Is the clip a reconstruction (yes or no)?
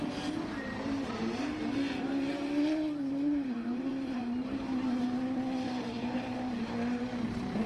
yes